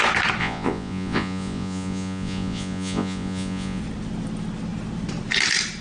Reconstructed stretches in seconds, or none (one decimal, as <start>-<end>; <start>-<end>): 0.4-3.8